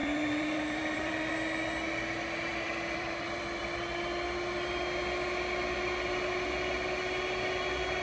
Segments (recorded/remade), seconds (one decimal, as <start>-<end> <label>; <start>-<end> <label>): 0.0-1.3 remade; 1.3-2.5 recorded; 2.5-3.6 remade; 3.6-8.0 recorded